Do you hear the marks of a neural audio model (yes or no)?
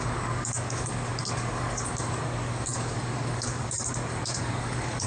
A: yes